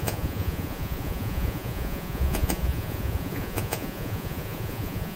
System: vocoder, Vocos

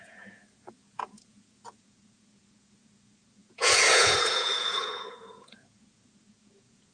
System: vocoder, Vocos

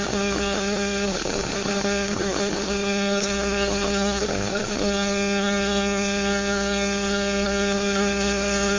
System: codec, SNAC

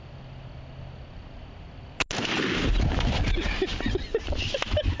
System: none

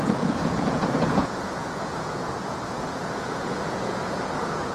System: vocoder, Vocos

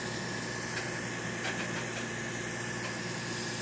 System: none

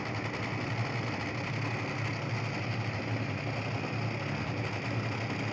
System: none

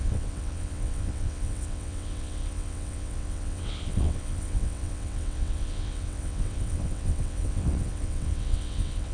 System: vocoder, WaveNeXt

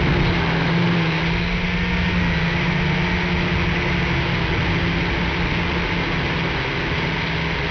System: none